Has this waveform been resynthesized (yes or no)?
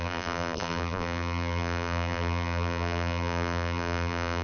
yes